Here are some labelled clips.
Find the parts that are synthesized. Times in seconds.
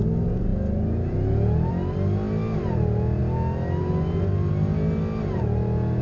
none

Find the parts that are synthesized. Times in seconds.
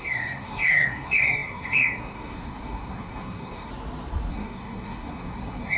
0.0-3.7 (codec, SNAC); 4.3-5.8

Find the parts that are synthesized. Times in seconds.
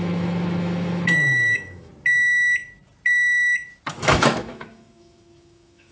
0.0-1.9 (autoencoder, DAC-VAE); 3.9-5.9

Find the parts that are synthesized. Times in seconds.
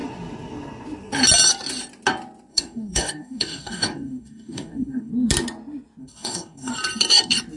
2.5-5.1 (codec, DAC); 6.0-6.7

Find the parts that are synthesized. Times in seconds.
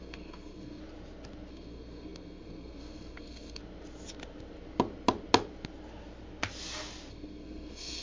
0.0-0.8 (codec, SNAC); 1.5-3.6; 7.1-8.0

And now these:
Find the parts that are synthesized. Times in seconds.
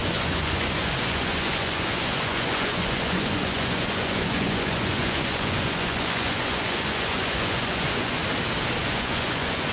0.0-8.2 (vocoder, Vocos); 8.8-9.7